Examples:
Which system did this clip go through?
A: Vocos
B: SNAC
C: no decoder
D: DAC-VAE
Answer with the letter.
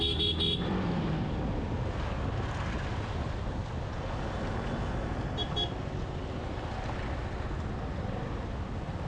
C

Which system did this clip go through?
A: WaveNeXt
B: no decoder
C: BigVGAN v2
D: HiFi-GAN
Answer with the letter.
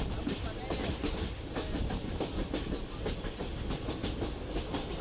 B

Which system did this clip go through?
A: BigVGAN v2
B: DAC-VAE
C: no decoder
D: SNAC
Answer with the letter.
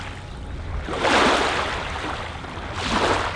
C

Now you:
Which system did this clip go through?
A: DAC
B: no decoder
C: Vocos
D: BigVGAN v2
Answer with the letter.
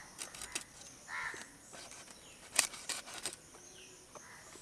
B